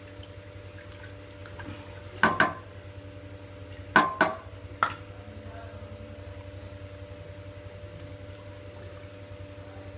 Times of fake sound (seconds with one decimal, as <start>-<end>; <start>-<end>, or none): none